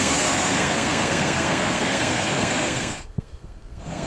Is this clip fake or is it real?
fake